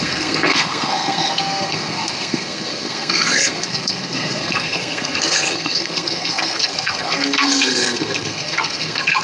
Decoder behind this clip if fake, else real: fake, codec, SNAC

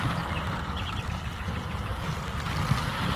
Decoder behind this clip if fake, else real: real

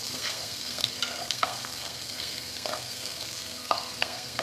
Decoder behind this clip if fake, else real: fake, codec, SNAC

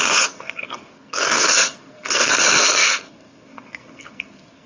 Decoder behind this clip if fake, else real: fake, codec, SNAC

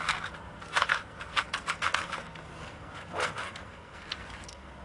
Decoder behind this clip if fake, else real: fake, codec, SNAC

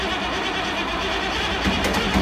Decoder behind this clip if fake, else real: real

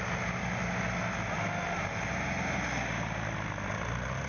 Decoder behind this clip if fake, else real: real